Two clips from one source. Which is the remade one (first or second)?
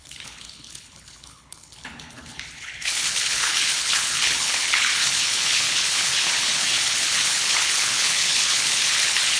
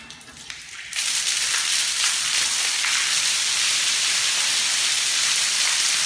first